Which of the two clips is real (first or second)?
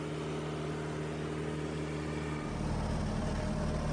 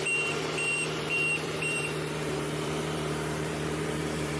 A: first